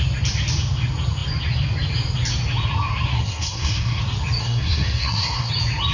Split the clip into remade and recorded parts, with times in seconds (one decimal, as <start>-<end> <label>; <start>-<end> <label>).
0.0-3.1 recorded; 3.1-4.0 remade; 4.0-4.4 recorded; 4.4-5.5 remade; 5.5-5.9 recorded